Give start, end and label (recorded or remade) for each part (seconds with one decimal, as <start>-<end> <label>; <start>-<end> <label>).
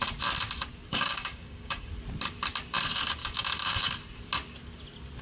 0.0-0.9 recorded; 0.9-1.9 remade; 1.9-3.2 recorded; 3.2-3.9 remade; 3.9-5.2 recorded